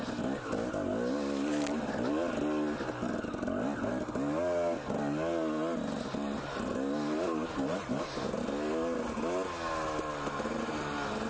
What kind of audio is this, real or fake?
real